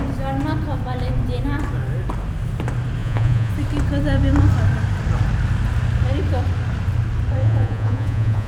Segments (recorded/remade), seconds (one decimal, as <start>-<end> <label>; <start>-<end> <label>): 0.0-3.0 recorded; 3.0-3.5 remade; 3.5-7.4 recorded; 7.4-8.5 remade